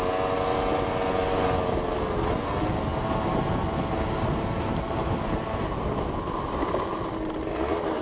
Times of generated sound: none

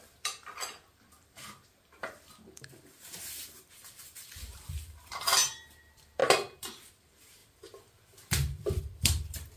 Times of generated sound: 0.0-6.2 (vocoder, BigVGAN v2); 7.0-9.6

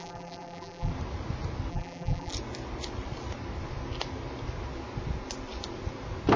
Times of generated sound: 0.0-0.9 (vocoder, BigVGAN v2); 1.7-2.3

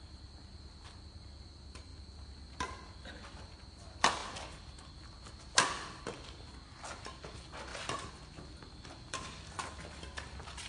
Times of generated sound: none